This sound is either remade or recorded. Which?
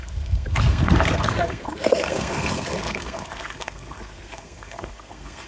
remade